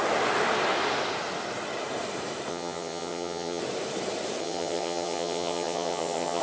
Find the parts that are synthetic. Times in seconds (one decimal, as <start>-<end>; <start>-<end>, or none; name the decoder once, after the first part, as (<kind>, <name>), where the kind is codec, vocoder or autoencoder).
2.5-3.6 (vocoder, HiFi-GAN); 4.4-6.4